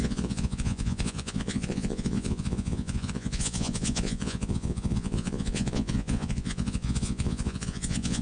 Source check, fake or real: fake